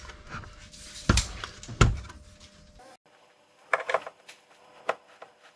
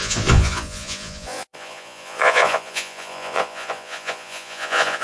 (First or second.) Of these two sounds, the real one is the first